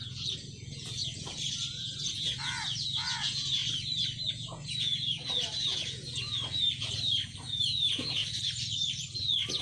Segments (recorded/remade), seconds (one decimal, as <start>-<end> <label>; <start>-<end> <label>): 0.0-3.6 remade; 3.6-4.3 recorded; 4.3-8.2 remade; 8.2-9.6 recorded